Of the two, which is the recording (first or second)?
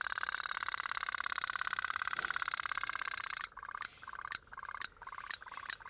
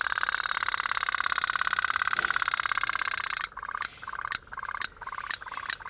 second